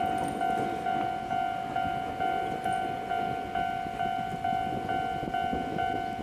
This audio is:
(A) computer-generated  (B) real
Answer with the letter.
B